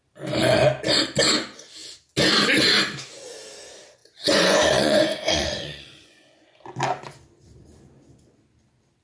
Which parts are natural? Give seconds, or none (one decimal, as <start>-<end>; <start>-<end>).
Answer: 0.0-4.0; 6.6-9.0